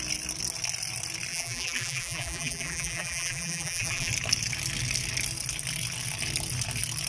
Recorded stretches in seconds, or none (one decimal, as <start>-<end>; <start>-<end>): 0.0-1.3; 4.1-7.1